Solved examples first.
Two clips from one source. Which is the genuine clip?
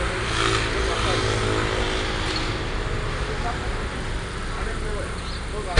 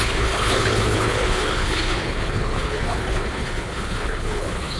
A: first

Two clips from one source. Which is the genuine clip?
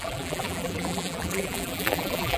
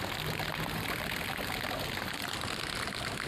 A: second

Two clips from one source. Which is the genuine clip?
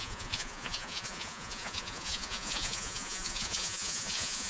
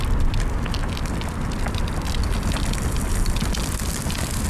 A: second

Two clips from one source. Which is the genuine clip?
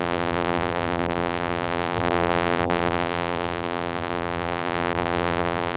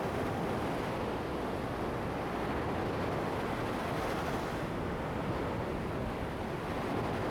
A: second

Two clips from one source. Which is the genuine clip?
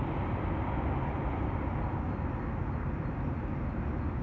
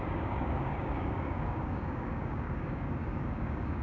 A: first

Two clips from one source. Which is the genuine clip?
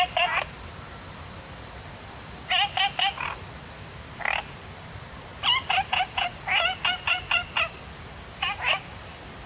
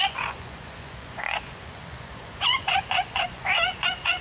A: first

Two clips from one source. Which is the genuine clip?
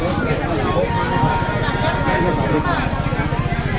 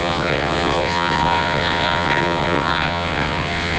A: first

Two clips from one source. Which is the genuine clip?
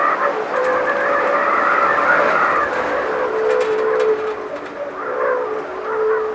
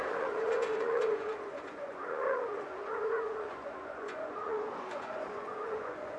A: first